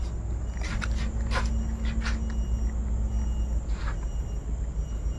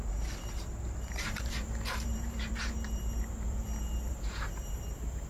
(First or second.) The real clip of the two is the first